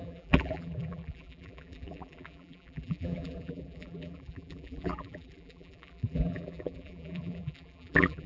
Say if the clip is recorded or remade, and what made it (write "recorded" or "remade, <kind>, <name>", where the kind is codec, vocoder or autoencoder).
remade, vocoder, BigVGAN v2